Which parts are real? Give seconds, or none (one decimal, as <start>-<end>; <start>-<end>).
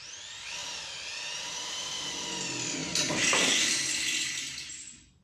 0.0-5.2